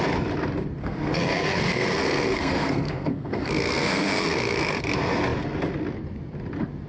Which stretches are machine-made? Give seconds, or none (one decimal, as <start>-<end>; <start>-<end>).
0.8-4.8